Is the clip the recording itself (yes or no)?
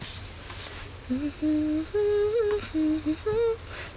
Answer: yes